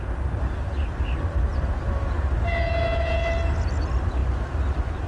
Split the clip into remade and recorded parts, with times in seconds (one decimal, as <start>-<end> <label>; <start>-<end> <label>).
0.0-5.1 recorded

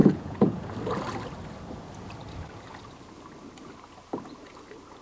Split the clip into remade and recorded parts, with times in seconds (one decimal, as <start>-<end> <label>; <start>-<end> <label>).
0.0-0.7 remade; 0.7-5.0 recorded